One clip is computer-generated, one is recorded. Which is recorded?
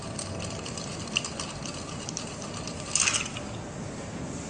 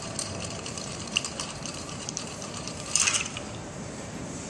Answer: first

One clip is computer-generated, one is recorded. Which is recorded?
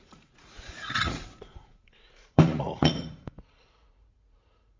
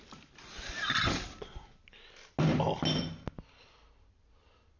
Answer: second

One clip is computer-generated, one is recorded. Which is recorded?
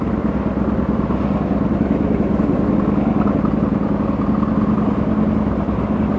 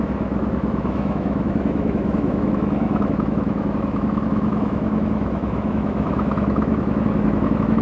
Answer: first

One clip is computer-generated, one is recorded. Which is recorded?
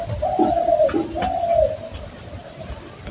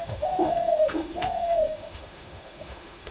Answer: first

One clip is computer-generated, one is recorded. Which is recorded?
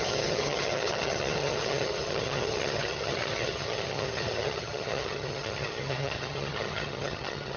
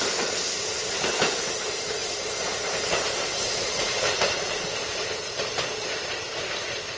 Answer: second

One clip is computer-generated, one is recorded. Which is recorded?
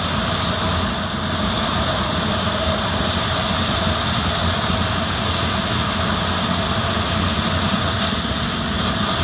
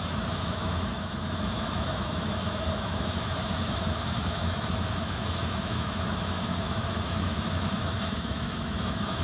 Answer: first